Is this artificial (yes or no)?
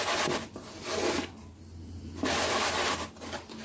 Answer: no